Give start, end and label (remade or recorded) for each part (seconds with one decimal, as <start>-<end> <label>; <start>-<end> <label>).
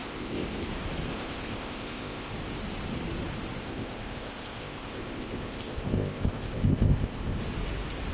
0.0-0.7 remade; 0.7-1.1 recorded; 1.1-2.3 remade; 2.3-3.6 recorded; 3.6-7.4 remade; 7.4-8.1 recorded